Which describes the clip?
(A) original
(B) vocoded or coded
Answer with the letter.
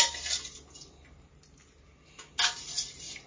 A